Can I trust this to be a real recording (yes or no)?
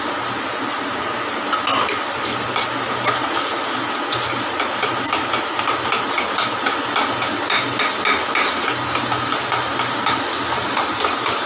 yes